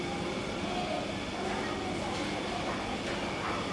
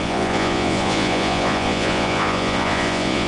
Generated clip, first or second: second